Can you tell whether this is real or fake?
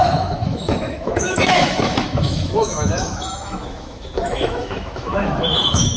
fake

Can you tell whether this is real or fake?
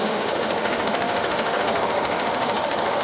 fake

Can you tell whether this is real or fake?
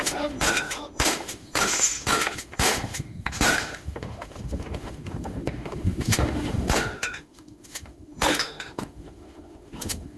fake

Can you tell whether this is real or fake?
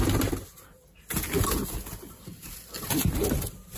real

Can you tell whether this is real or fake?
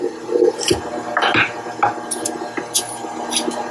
real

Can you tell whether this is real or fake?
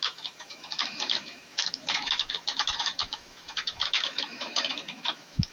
fake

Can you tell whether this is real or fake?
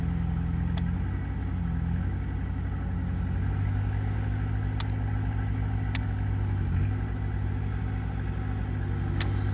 real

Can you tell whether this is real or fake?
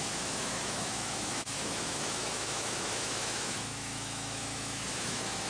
fake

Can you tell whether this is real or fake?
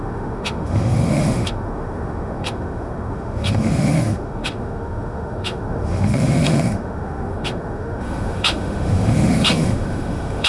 fake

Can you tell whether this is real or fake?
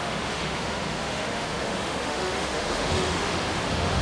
fake